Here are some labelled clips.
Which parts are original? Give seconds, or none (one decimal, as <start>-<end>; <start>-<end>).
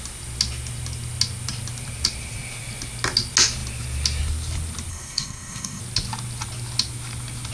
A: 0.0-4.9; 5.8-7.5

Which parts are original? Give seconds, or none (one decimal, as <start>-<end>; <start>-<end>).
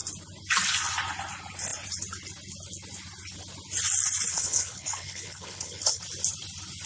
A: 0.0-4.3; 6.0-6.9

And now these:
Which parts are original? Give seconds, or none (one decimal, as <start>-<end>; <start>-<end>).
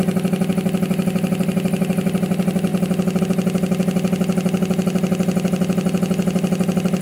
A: 0.0-7.0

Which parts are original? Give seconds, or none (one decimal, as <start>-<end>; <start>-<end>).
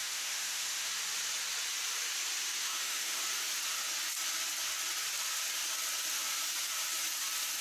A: 0.9-2.6; 3.2-7.6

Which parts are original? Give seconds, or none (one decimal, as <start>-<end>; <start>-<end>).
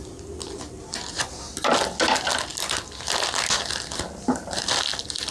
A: 0.0-5.3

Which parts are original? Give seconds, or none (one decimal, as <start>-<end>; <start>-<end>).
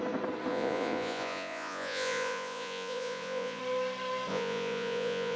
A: 0.0-0.5; 3.6-4.3